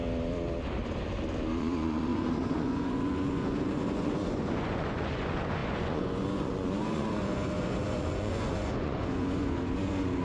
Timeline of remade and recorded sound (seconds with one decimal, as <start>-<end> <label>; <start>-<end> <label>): 0.0-1.6 recorded; 1.6-10.2 remade